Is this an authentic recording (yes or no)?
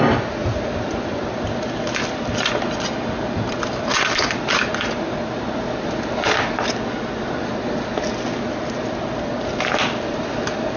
yes